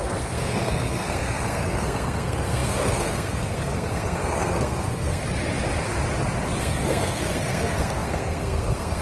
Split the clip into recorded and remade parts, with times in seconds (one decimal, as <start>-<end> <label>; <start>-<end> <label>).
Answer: 0.0-5.2 remade; 5.2-6.6 recorded; 6.6-9.0 remade